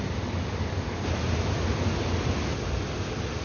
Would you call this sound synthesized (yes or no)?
no